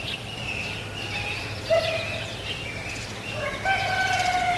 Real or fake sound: real